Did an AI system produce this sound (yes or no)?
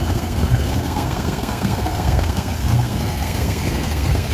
yes